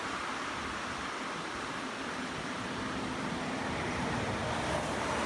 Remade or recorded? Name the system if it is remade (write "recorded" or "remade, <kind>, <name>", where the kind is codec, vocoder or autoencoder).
remade, vocoder, BigVGAN v2